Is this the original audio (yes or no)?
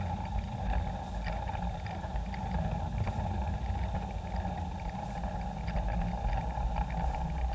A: yes